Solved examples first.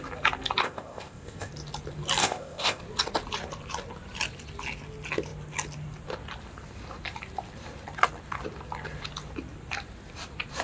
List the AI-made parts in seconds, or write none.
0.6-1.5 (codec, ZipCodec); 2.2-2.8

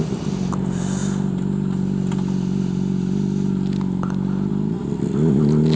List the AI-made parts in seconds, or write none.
none

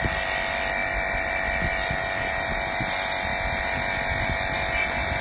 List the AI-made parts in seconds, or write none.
none